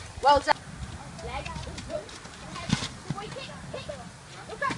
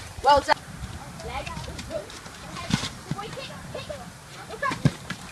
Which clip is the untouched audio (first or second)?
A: first